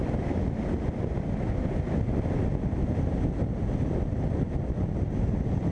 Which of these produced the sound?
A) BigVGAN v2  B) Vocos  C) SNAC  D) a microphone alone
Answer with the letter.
D